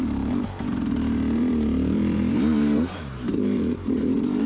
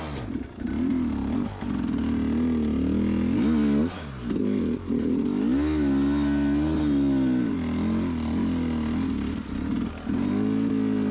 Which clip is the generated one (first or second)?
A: first